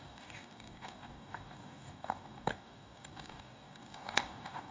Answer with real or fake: fake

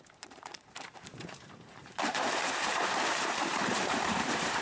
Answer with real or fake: fake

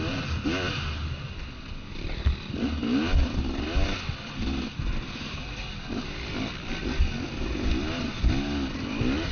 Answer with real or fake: real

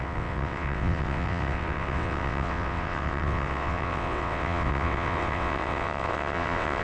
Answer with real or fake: fake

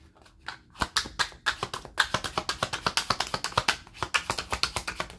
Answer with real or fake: real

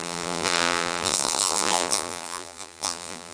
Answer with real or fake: fake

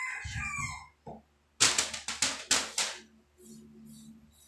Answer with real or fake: real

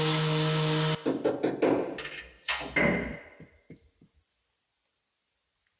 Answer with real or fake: real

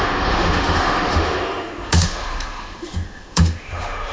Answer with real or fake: fake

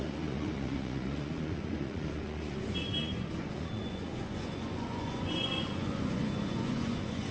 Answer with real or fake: fake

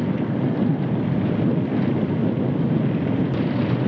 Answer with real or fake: real